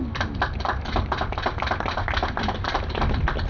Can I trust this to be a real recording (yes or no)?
yes